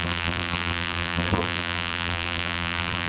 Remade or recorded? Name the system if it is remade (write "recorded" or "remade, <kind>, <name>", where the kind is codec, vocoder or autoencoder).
remade, vocoder, BigVGAN v2